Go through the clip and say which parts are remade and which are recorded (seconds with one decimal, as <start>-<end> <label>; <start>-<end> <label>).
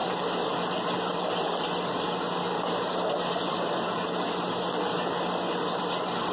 0.0-6.3 recorded